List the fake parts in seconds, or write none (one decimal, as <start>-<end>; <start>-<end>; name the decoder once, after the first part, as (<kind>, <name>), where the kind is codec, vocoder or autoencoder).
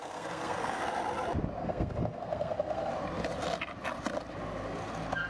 0.0-0.8 (codec, SNAC); 1.6-2.9